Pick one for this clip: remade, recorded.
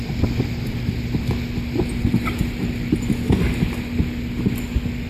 recorded